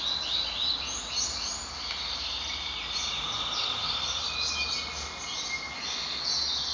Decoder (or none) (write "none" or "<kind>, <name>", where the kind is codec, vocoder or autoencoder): none